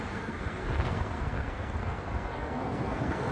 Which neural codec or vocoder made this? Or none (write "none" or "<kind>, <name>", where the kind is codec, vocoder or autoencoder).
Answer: codec, SNAC